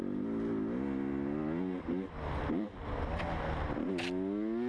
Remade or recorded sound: recorded